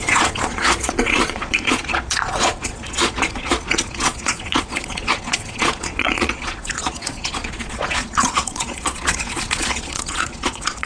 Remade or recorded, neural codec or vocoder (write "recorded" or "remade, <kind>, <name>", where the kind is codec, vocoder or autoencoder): remade, vocoder, Vocos